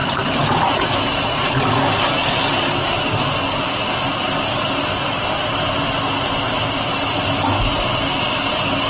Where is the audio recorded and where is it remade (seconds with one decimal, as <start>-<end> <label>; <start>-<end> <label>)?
0.0-1.5 remade; 1.5-8.9 recorded